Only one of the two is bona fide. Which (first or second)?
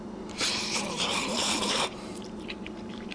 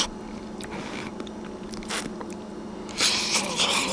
second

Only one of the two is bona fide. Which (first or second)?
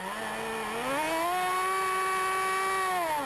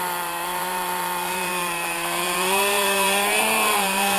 first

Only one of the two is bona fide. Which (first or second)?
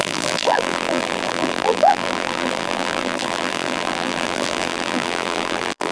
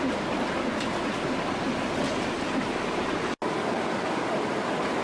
second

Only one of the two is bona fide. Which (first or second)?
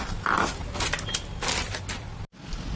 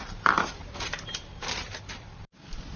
first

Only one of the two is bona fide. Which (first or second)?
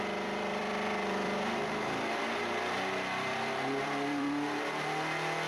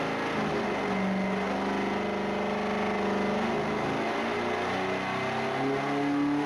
second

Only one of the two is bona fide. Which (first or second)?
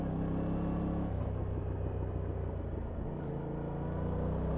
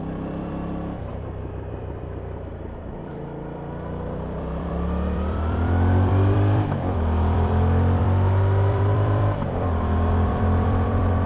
first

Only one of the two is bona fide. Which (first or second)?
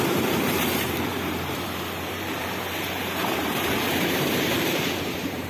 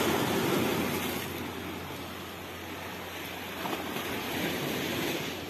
second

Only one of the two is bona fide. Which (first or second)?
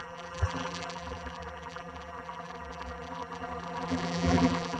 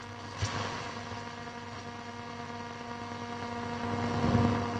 second